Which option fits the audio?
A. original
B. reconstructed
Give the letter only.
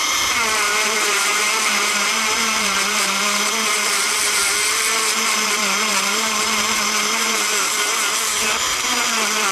B